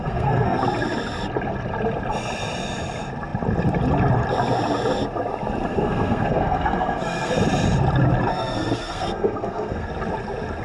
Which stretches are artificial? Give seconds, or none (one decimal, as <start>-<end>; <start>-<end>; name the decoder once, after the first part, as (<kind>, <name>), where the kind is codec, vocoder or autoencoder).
0.0-0.6 (codec, SNAC); 5.7-7.3; 8.3-9.9